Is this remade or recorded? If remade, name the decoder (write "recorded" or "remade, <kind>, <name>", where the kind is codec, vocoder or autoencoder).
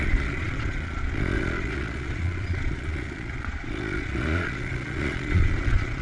remade, vocoder, Vocos